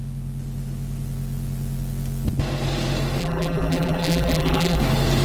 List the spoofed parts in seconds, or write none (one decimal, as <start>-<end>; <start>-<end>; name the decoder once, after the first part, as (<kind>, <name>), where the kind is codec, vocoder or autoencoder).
3.2-4.8 (vocoder, BigVGAN v2)